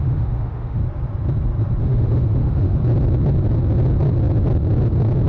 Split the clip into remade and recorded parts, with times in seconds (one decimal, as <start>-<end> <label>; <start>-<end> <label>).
0.0-0.8 remade; 0.8-1.8 recorded; 1.8-2.8 remade; 2.8-5.3 recorded